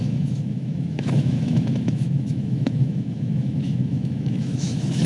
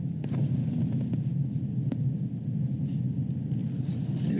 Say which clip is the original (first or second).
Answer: second